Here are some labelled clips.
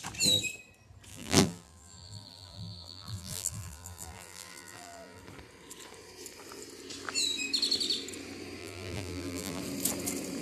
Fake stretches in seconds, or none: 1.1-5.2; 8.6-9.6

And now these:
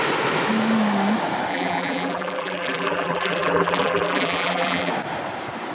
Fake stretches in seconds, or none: 1.5-4.9

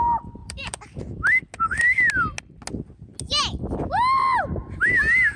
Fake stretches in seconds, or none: 0.4-1.0

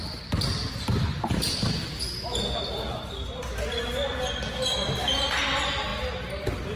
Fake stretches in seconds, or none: none

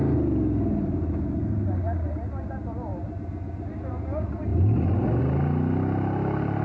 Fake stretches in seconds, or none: none